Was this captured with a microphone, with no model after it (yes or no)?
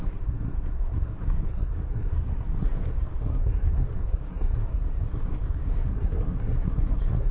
no